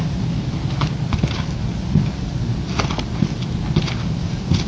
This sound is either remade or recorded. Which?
recorded